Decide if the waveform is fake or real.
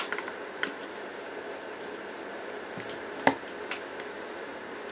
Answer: real